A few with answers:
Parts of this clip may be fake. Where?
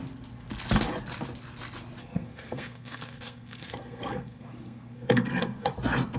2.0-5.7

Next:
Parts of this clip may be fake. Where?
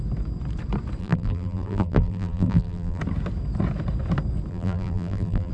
1.0-3.0; 4.5-5.5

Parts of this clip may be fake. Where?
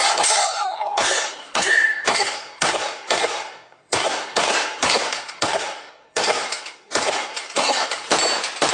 0.0-8.1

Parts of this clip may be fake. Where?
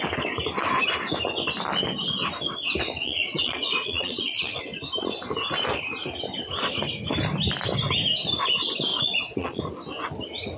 3.0-4.6; 8.9-9.6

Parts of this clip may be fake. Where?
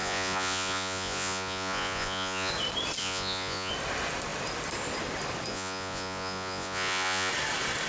0.0-2.5; 3.0-3.7; 5.5-7.3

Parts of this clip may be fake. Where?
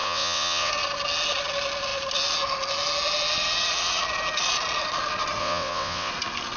0.0-0.7; 5.4-6.1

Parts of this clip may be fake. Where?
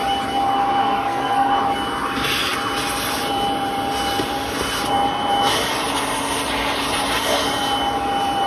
0.8-1.5